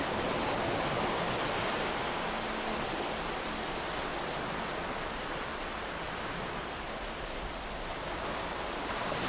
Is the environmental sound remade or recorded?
recorded